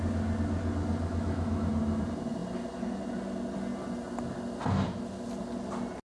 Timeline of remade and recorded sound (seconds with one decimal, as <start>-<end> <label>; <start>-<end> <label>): 0.0-1.1 recorded; 1.1-1.7 remade; 1.7-6.1 recorded